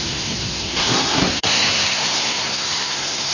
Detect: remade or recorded remade